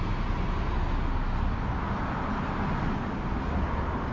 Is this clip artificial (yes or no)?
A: no